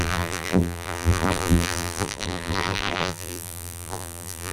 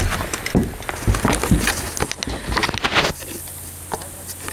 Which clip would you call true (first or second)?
second